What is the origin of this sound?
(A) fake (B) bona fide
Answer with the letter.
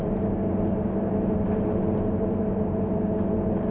A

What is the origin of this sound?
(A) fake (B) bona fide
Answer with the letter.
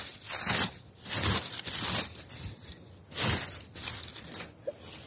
A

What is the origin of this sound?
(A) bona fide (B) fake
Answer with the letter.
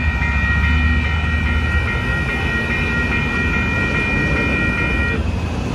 A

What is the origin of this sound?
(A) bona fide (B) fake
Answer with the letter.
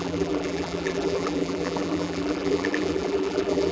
B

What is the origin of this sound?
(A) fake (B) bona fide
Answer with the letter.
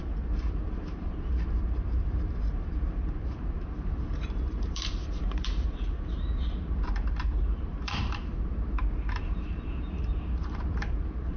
A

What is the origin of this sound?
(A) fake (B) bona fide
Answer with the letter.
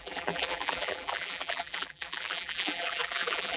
A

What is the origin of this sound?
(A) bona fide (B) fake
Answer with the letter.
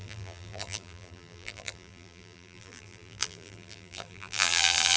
B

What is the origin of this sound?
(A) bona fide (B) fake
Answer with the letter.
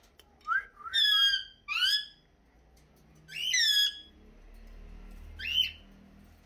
A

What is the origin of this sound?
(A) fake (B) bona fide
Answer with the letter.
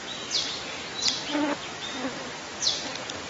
B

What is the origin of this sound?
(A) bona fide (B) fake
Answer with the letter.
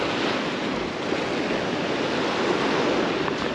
A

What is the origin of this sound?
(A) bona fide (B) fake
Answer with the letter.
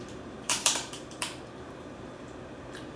B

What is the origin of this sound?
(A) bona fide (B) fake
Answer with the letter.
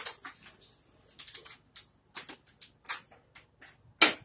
A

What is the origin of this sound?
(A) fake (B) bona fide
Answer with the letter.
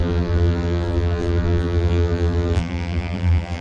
A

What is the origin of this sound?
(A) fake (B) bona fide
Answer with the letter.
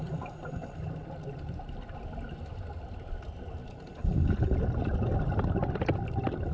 B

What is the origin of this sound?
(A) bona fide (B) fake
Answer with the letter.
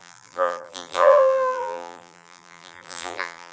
B